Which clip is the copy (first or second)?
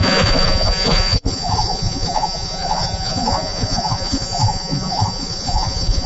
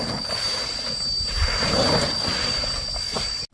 first